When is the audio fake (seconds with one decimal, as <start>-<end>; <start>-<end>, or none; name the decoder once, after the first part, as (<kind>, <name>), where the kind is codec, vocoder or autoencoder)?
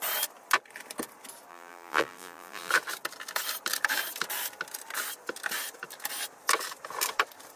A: 1.5-2.7 (vocoder, BigVGAN v2)